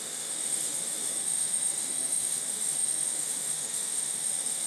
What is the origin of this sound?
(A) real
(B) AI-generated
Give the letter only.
B